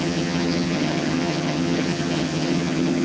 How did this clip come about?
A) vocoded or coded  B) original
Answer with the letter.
A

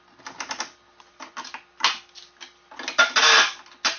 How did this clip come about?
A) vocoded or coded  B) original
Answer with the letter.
B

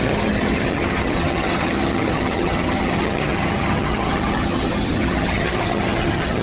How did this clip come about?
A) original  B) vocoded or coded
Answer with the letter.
B